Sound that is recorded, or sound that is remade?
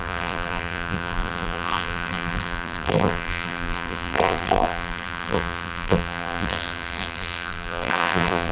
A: remade